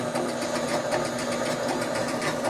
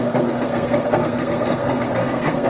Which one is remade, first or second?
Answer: second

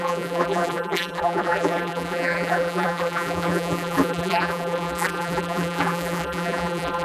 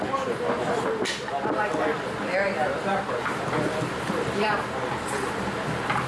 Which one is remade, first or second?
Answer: first